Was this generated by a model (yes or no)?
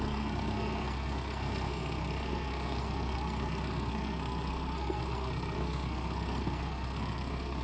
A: yes